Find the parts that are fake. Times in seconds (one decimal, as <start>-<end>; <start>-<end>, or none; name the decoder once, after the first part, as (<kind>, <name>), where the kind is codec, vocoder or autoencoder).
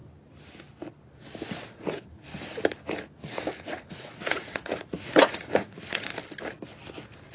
1.7-2.3 (vocoder, Vocos); 3.6-6.1